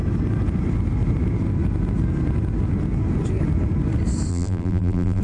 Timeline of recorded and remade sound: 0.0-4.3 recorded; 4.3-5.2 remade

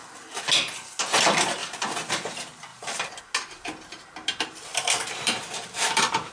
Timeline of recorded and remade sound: 0.0-1.6 recorded; 1.6-2.1 remade; 2.1-2.7 recorded; 2.7-3.2 remade; 3.2-4.7 recorded; 4.7-6.3 remade

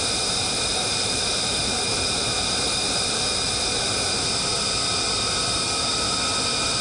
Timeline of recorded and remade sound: 0.0-0.7 recorded; 0.7-1.8 remade; 1.8-6.8 recorded

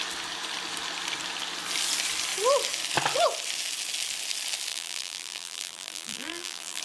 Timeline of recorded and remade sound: 0.0-4.7 recorded; 4.7-6.8 remade

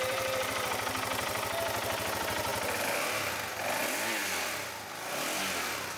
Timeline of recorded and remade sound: 0.0-2.5 remade; 2.5-3.3 recorded; 3.3-4.2 remade; 4.2-6.0 recorded